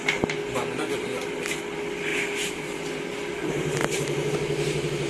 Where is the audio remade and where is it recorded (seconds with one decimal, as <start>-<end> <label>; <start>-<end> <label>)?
0.0-2.1 recorded; 2.1-2.8 remade; 2.8-3.4 recorded; 3.4-4.3 remade; 4.3-5.1 recorded